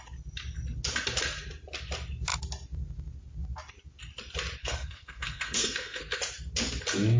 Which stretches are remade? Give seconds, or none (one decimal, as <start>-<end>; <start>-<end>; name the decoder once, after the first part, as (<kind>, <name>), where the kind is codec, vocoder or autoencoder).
4.6-6.0 (codec, SNAC)